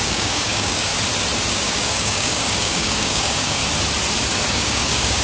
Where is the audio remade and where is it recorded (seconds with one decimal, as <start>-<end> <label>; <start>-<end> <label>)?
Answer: 0.0-0.9 remade; 0.9-1.5 recorded; 1.5-3.6 remade; 3.6-4.5 recorded; 4.5-5.2 remade